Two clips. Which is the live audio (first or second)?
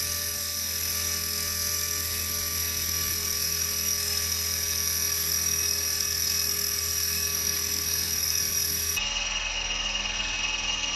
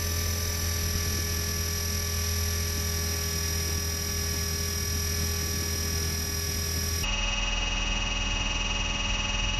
second